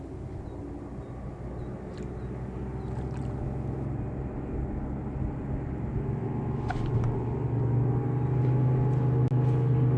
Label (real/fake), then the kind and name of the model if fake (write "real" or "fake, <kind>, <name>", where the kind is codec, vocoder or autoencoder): real